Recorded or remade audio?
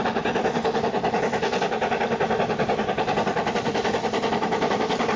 recorded